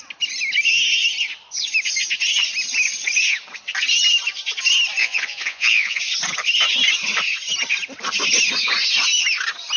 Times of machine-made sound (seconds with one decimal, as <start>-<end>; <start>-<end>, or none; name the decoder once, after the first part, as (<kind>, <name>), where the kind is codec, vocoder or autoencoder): 5.0-6.0 (vocoder, Vocos)